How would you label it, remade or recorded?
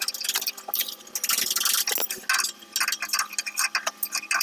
recorded